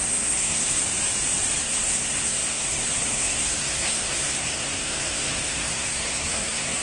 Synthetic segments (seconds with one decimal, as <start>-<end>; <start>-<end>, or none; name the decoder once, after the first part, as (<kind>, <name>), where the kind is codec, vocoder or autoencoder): 0.0-0.8 (codec, SNAC); 1.6-6.8